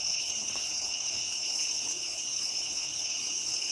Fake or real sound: fake